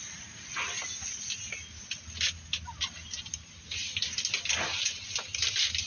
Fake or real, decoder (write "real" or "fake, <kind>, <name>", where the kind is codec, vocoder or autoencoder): real